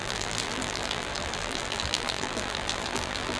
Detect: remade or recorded remade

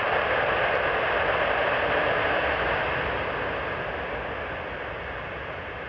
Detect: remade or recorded recorded